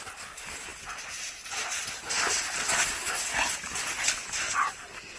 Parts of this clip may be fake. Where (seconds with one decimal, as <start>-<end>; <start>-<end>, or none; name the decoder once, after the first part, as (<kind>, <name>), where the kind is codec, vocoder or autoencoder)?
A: none